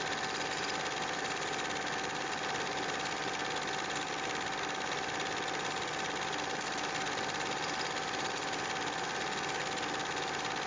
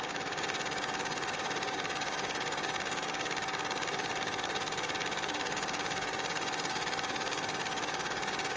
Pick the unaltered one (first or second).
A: first